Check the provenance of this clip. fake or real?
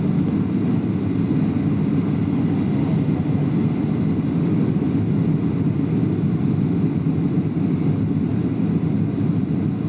real